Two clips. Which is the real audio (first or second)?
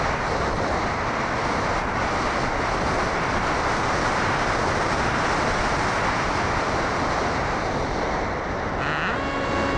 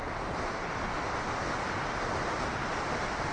first